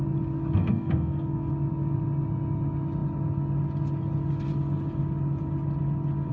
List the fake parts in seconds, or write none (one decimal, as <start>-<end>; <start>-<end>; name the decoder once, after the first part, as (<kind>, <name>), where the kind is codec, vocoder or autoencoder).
0.6-1.5 (codec, SNAC)